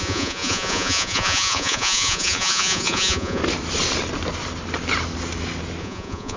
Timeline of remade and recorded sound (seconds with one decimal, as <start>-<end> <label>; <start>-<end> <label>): 0.0-3.4 remade; 3.4-5.8 recorded; 5.8-6.4 remade

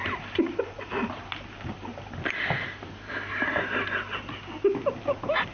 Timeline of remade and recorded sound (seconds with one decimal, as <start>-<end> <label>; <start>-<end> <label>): 0.0-0.6 recorded; 0.6-1.9 remade; 1.9-5.0 recorded; 5.0-5.5 remade